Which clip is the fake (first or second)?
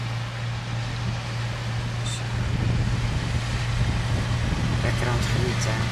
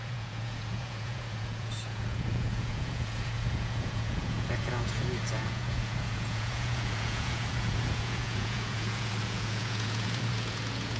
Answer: second